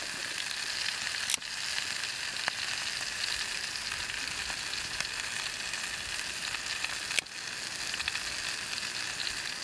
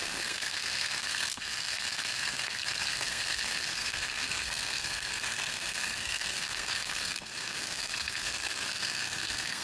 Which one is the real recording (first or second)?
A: first